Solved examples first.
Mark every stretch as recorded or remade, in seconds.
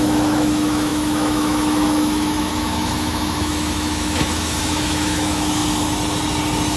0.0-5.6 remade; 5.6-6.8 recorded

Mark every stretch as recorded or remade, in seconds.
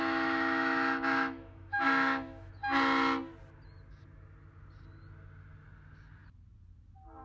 0.0-2.6 remade; 2.6-7.2 recorded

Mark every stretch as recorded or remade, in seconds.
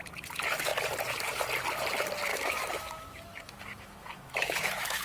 0.0-2.3 recorded; 2.3-5.0 remade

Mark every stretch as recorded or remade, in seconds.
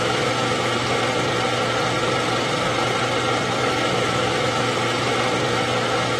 0.0-0.8 remade; 0.8-3.5 recorded; 3.5-4.8 remade; 4.8-5.6 recorded; 5.6-6.2 remade